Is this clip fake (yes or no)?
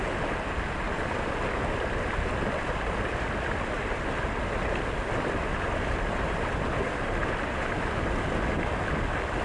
no